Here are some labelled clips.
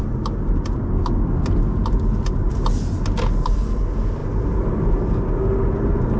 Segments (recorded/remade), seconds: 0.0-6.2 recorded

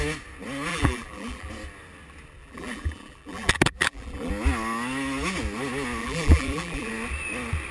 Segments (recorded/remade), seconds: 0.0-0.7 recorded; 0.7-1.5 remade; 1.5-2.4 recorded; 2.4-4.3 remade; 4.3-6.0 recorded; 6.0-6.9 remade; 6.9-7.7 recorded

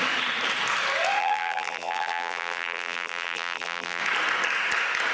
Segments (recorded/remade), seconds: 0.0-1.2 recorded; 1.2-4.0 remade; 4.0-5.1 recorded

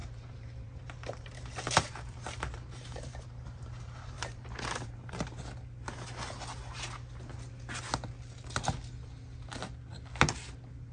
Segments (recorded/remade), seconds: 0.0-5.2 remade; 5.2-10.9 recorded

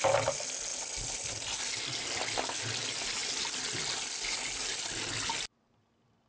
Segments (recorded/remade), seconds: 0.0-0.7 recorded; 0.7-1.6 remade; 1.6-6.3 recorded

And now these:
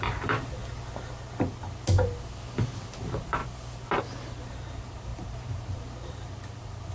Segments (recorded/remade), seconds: 0.0-0.6 remade; 0.6-3.0 recorded; 3.0-3.4 remade; 3.4-4.0 recorded; 4.0-6.9 remade

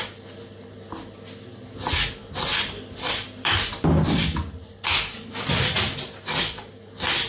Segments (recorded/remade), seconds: 0.0-2.5 recorded; 2.5-4.4 remade; 4.4-7.3 recorded